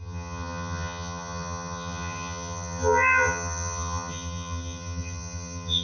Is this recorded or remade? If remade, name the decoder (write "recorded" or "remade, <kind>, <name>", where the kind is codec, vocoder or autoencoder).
remade, vocoder, HiFi-GAN